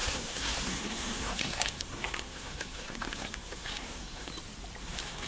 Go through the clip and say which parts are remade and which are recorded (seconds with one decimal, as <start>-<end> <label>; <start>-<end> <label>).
0.0-4.3 remade; 4.3-4.8 recorded; 4.8-5.3 remade